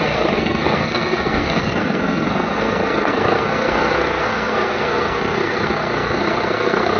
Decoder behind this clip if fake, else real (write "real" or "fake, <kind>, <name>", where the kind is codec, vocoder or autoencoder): fake, codec, SNAC